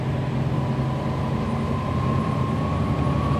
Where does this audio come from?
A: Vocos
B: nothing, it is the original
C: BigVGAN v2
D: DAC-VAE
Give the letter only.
B